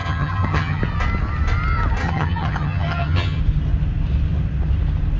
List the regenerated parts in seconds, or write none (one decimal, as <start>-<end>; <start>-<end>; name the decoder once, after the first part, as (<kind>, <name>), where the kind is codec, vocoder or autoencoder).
0.0-0.8 (vocoder, HiFi-GAN); 2.0-3.4